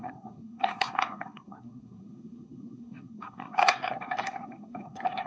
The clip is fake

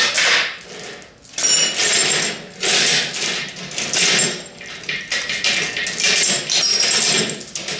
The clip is real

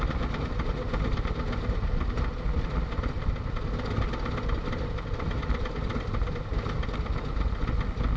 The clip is real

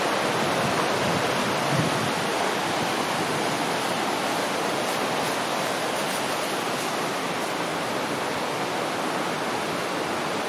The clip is real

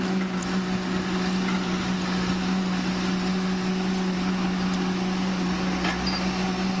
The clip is real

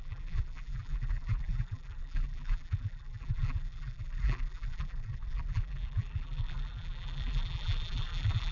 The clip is fake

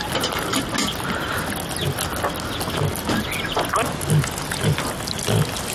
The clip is real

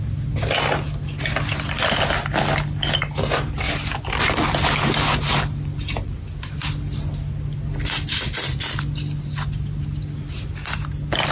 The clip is real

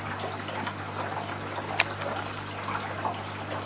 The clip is real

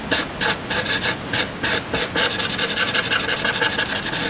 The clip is real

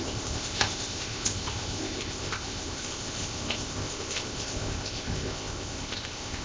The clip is fake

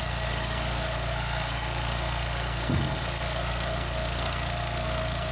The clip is fake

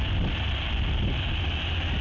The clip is real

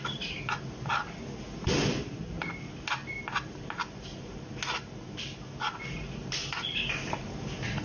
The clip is real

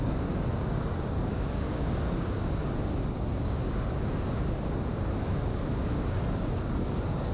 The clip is fake